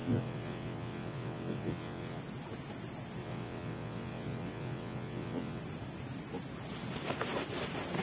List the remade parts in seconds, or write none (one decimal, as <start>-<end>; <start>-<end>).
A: 0.0-2.2; 3.2-5.6